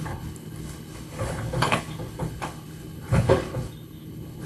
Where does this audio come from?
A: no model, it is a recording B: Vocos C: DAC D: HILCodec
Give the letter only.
D